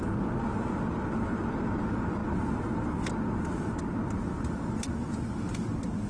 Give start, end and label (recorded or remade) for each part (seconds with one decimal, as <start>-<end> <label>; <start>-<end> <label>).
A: 0.0-6.1 recorded